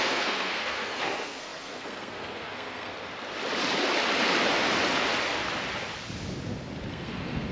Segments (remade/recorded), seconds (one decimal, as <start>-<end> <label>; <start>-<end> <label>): 0.0-2.9 remade; 2.9-6.9 recorded; 6.9-7.5 remade